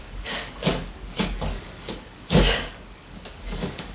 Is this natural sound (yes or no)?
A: no